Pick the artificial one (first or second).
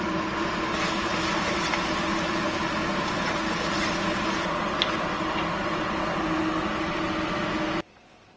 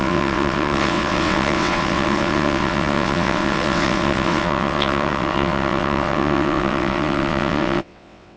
second